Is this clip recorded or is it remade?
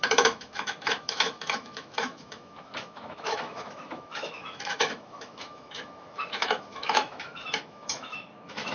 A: remade